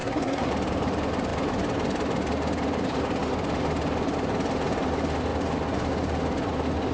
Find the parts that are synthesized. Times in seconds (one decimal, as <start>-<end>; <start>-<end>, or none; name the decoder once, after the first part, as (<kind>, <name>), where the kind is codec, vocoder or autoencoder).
0.0-0.5 (codec, SNAC)